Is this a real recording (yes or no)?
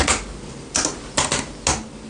yes